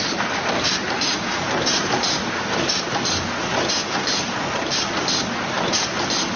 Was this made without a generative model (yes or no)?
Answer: yes